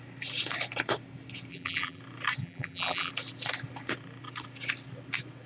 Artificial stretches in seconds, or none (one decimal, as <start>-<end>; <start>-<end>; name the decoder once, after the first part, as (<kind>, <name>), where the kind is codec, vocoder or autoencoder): 1.5-2.0 (vocoder, BigVGAN v2); 2.4-3.1